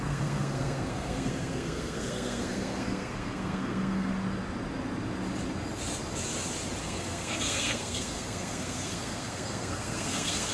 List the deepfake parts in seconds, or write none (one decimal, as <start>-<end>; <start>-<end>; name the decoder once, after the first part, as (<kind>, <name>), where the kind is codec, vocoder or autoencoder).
0.0-4.1 (codec, SNAC); 6.8-10.5